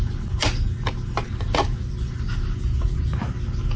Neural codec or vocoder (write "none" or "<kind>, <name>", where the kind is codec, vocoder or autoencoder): none